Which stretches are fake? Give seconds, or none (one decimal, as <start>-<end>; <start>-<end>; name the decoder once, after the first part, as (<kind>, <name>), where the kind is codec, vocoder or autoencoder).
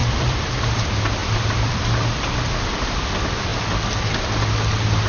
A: 0.0-0.7 (vocoder, BigVGAN v2); 1.2-3.1